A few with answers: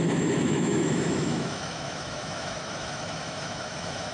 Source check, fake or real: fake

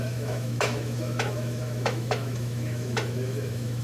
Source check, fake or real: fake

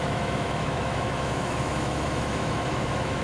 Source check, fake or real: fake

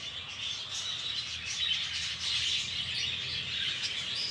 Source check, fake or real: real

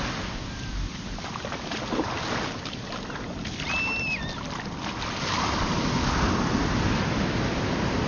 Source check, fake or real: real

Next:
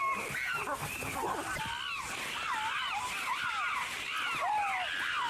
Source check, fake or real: real